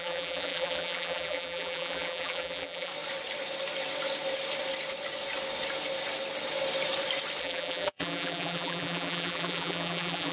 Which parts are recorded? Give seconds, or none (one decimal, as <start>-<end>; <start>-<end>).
2.9-7.4